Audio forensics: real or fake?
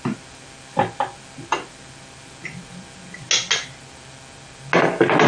real